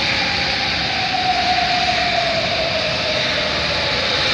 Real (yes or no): yes